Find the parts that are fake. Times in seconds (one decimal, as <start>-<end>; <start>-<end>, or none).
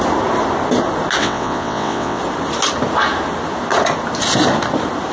1.2-2.2